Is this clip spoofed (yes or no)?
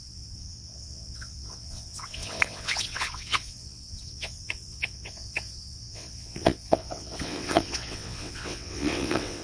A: yes